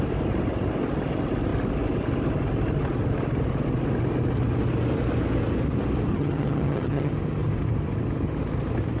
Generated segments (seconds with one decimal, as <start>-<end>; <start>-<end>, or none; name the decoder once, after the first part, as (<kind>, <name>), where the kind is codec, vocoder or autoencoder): 6.1-7.1 (vocoder, HiFi-GAN)